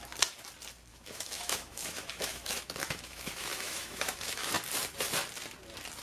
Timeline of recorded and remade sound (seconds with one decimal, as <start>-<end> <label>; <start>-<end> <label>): 0.0-0.9 recorded; 0.9-4.5 remade; 4.5-6.0 recorded